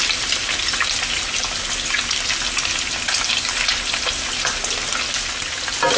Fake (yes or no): no